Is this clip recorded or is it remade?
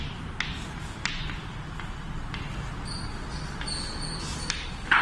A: recorded